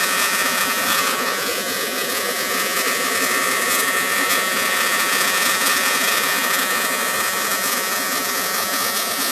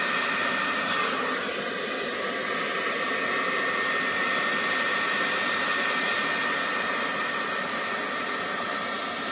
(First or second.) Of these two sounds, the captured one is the second